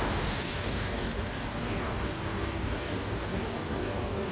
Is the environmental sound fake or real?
fake